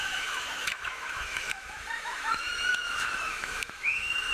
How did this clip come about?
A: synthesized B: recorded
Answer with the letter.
A